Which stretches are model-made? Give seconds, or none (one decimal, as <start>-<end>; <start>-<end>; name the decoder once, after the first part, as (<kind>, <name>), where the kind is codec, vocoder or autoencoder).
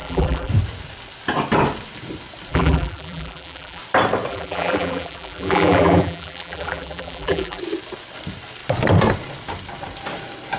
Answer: 0.0-0.5 (vocoder, BigVGAN v2); 2.5-3.8; 4.3-7.6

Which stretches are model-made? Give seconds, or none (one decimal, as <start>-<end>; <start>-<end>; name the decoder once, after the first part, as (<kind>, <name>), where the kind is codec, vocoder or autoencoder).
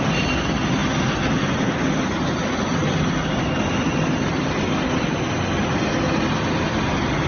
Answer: none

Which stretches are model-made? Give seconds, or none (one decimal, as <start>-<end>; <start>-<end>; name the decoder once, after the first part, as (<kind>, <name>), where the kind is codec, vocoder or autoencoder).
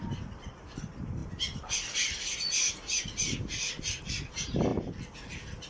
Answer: none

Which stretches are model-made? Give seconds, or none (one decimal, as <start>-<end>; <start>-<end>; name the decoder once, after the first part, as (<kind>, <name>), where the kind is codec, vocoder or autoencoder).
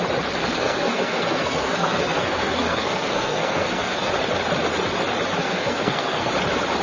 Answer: 0.4-4.1 (codec, SNAC); 5.4-6.3